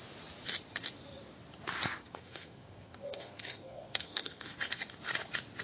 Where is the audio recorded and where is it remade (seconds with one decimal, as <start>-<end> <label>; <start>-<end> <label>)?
0.0-2.0 recorded; 2.0-4.8 remade; 4.8-5.6 recorded